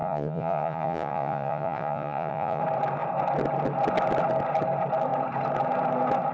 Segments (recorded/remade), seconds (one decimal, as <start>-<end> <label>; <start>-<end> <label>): 0.0-2.6 remade; 2.6-6.3 recorded